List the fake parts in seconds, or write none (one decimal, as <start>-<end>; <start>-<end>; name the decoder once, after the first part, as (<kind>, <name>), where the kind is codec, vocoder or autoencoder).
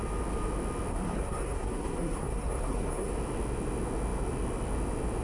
0.9-3.1 (codec, SNAC)